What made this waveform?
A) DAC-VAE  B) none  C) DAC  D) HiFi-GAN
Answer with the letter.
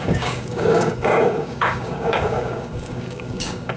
C